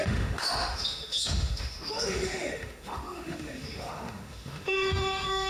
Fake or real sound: fake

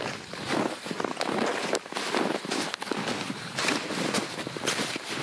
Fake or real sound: real